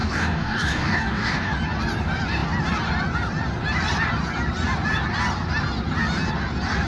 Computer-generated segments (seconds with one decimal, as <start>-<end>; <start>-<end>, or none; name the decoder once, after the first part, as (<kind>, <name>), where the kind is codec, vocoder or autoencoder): 0.0-1.5 (codec, DAC)